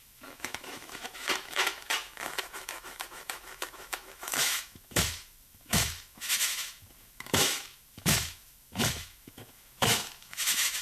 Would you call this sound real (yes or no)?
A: no